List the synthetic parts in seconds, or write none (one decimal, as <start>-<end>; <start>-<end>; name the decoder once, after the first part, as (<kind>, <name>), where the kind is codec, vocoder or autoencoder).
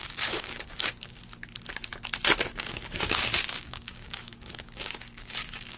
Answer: 0.0-1.2 (codec, DAC); 2.5-5.8